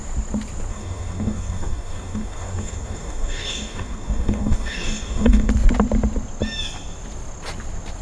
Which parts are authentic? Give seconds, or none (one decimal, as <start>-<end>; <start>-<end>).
0.0-0.7; 5.5-8.0